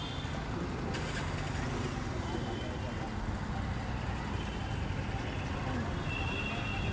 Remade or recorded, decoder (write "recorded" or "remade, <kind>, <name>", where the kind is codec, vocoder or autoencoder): recorded